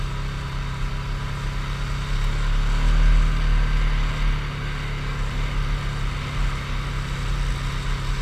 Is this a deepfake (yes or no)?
no